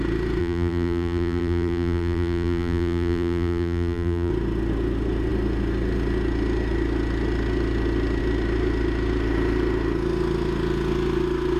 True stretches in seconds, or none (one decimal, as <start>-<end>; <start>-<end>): 0.0-0.4; 4.3-11.6